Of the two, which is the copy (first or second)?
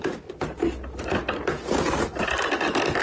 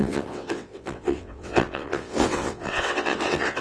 second